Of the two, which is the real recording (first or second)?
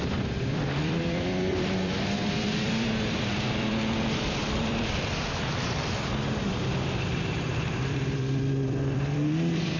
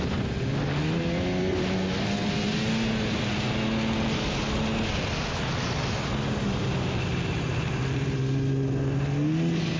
second